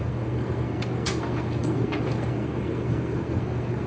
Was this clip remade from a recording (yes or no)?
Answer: yes